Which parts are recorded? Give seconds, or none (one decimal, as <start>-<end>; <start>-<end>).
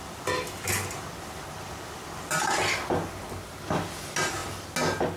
3.1-5.2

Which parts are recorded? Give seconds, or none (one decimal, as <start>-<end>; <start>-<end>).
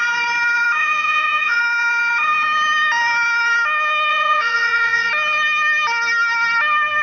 0.0-0.8; 1.6-4.1; 5.1-7.0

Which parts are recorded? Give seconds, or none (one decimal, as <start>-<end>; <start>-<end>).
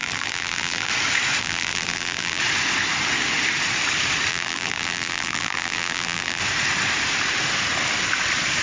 0.9-1.4; 2.4-4.3; 6.4-8.6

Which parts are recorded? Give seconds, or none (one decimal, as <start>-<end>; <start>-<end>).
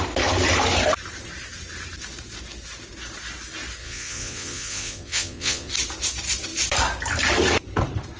0.0-3.8; 5.7-8.2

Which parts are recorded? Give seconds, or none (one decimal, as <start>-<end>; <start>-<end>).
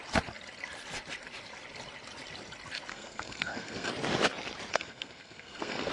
0.0-2.9; 3.9-4.7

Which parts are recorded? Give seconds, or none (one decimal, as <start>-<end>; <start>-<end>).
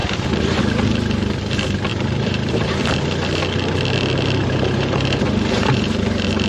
0.6-1.9; 2.7-4.4; 6.0-6.5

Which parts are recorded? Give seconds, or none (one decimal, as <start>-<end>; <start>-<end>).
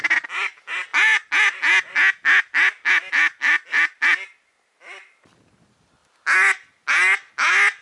0.0-7.8